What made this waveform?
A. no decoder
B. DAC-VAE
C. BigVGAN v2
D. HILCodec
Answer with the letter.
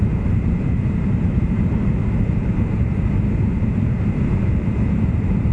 C